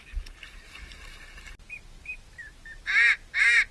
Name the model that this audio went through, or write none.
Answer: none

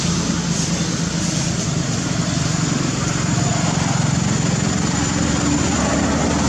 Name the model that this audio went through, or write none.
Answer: none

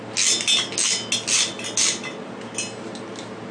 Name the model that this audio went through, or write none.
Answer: none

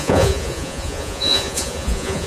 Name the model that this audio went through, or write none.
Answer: vocoder, Vocos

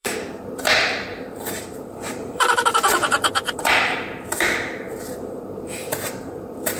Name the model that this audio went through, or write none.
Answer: vocoder, BigVGAN v2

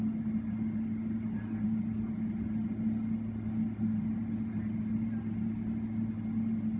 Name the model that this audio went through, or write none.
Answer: none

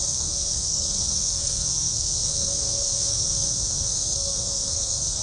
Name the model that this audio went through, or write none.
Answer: codec, SNAC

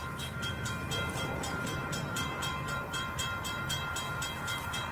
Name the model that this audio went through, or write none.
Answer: vocoder, BigVGAN v2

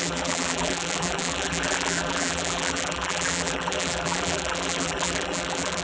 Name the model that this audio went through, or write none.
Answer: vocoder, BigVGAN v2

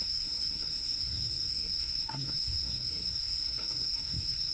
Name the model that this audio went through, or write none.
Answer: codec, SNAC